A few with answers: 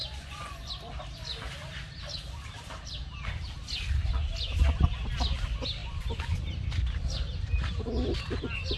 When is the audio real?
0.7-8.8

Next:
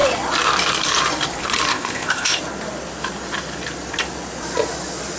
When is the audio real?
0.0-1.7; 2.4-5.2